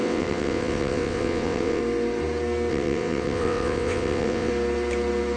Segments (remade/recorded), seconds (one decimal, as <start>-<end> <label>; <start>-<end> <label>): 0.0-1.8 remade; 1.8-2.7 recorded; 2.7-4.5 remade; 4.5-5.4 recorded